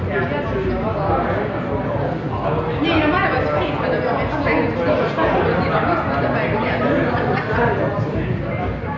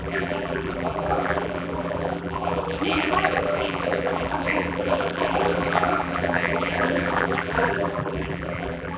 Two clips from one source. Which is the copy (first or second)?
second